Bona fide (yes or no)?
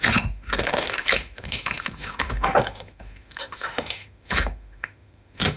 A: no